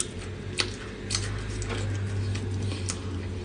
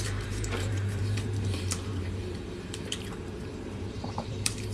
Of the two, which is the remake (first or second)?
second